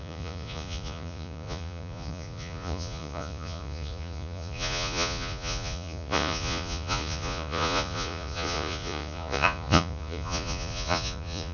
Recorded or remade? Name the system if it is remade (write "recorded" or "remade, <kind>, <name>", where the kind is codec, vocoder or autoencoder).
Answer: remade, vocoder, Vocos